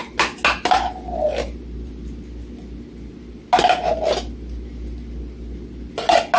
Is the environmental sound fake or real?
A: real